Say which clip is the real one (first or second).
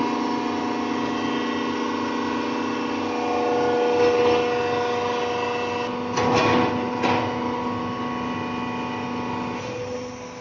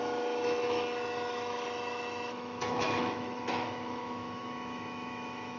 first